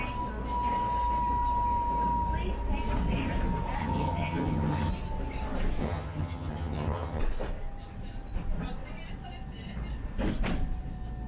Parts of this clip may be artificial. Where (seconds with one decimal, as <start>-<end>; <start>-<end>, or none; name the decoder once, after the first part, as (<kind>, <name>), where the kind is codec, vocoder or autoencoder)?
3.8-4.9 (vocoder, HiFi-GAN); 5.8-7.2